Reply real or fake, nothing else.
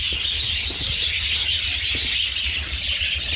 real